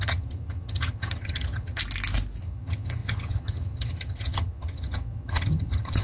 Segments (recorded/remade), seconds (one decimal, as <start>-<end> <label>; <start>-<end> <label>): 0.0-1.8 remade; 1.8-2.4 recorded; 2.4-6.0 remade